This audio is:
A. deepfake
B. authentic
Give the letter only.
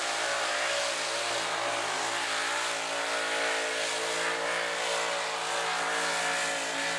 B